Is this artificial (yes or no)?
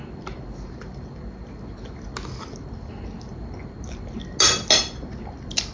no